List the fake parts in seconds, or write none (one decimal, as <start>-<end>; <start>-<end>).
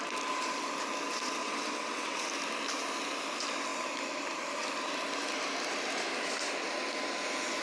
1.4-2.3